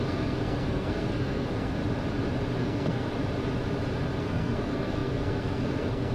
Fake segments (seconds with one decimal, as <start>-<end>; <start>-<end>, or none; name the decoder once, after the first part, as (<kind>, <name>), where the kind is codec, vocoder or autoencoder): 0.0-1.8 (codec, SNAC); 2.6-3.1; 4.2-6.1